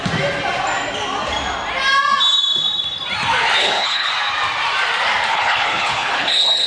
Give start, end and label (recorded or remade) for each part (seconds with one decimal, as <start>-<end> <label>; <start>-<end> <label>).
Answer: 0.0-3.6 recorded; 3.6-4.1 remade; 4.1-5.3 recorded; 5.3-6.7 remade